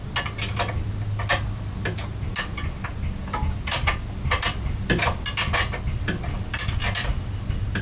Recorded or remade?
recorded